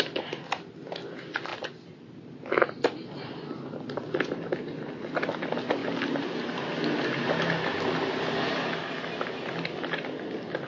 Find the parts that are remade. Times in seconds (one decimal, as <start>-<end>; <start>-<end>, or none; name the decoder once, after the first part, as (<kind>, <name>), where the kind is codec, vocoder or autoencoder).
1.5-4.2 (vocoder, BigVGAN v2)